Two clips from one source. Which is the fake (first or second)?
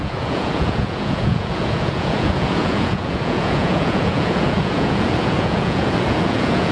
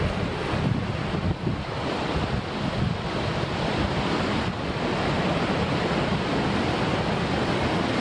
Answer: first